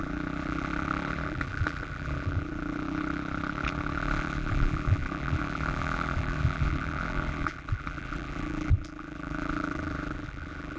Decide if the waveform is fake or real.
fake